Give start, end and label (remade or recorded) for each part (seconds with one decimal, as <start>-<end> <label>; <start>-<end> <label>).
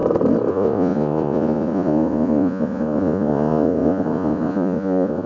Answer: 0.0-0.5 recorded; 0.5-5.3 remade